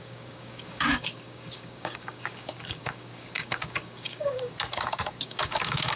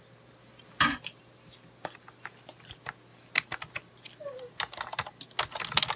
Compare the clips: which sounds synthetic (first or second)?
first